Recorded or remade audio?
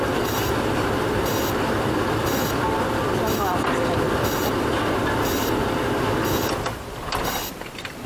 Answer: remade